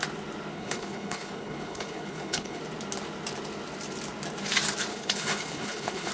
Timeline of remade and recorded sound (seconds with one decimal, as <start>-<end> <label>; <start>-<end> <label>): 0.0-0.5 recorded; 0.5-2.6 remade; 2.6-4.9 recorded; 4.9-6.1 remade